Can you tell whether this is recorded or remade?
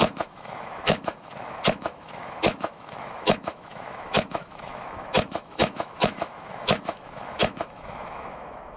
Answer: remade